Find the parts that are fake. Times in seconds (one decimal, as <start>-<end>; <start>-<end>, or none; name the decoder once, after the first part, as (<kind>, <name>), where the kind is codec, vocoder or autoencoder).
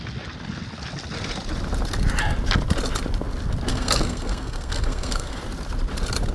3.7-5.4 (codec, SNAC)